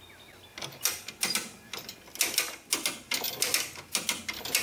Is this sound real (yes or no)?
yes